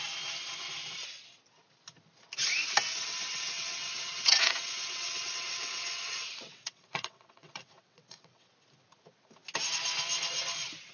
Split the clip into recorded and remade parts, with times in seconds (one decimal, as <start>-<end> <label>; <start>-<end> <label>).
0.0-3.3 recorded; 3.3-8.5 remade; 8.5-10.9 recorded